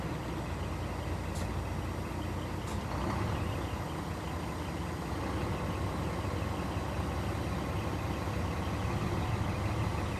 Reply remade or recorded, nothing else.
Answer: recorded